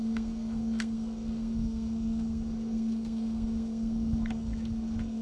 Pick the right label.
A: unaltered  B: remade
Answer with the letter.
B